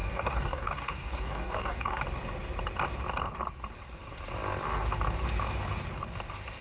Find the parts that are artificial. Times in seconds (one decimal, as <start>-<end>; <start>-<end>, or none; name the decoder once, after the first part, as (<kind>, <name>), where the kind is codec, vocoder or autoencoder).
0.0-2.0 (codec, DAC)